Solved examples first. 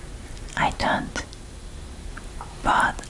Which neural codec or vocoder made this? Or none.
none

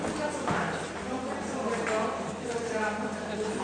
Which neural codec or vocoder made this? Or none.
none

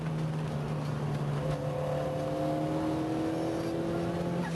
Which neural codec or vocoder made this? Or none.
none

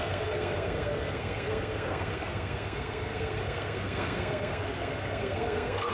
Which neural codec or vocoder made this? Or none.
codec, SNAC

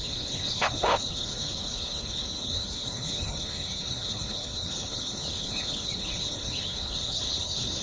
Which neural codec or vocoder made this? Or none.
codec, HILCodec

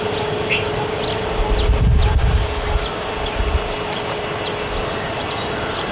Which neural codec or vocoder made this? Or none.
none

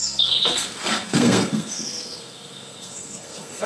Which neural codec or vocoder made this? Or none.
codec, SNAC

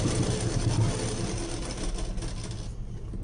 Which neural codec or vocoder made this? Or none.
none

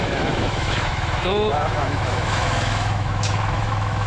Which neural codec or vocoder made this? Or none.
autoencoder, DAC-VAE